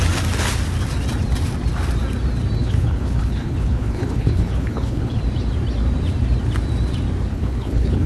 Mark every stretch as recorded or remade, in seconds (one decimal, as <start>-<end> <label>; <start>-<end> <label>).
0.0-2.6 recorded; 2.6-5.2 remade; 5.2-7.3 recorded; 7.3-8.1 remade